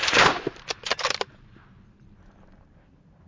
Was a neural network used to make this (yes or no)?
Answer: yes